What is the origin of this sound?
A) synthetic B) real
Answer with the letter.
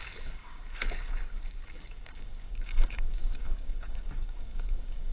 A